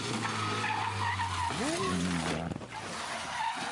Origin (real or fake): real